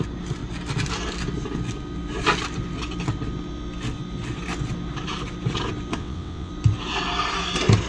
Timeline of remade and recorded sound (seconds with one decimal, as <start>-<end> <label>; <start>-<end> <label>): 0.0-6.0 recorded; 6.0-6.5 remade; 6.5-7.9 recorded